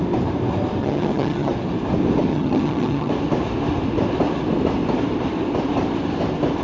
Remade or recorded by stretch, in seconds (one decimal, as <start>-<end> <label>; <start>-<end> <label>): 0.0-0.8 recorded; 0.8-1.5 remade; 1.5-2.3 recorded; 2.3-3.1 remade; 3.1-6.6 recorded